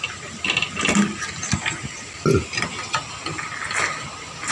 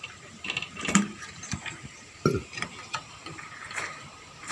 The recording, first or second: first